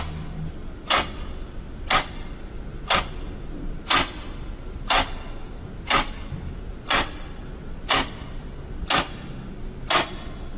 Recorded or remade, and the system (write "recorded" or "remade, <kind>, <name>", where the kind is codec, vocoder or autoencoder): recorded